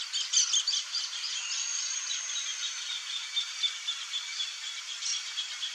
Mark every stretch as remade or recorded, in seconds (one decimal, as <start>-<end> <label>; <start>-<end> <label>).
0.0-5.7 recorded